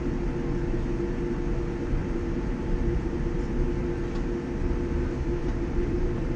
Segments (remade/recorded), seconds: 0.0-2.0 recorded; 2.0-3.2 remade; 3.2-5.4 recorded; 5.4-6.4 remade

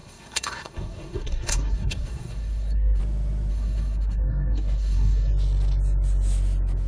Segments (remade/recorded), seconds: 0.0-3.0 remade; 3.0-3.5 recorded; 3.5-5.3 remade; 5.3-6.9 recorded

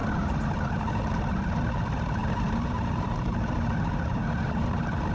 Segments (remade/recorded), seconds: 0.0-1.4 remade; 1.4-2.2 recorded; 2.2-5.1 remade

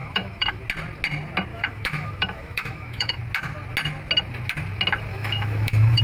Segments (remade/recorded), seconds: 0.0-0.6 remade; 0.6-1.5 recorded; 1.5-3.2 remade; 3.2-5.1 recorded; 5.1-6.0 remade

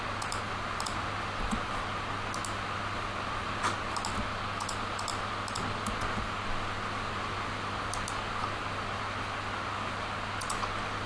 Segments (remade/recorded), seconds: 0.0-11.1 recorded

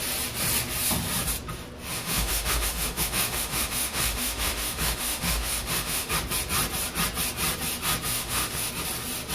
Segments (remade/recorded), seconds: 0.0-1.9 recorded; 1.9-6.1 remade; 6.1-8.1 recorded; 8.1-8.7 remade; 8.7-9.3 recorded

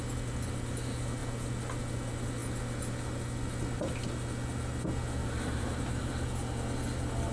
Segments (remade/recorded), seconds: 0.0-5.2 recorded; 5.2-6.1 remade; 6.1-7.3 recorded

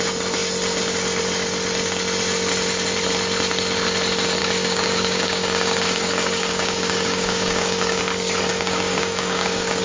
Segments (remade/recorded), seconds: 0.0-4.4 recorded; 4.4-8.0 remade; 8.0-8.5 recorded; 8.5-9.8 remade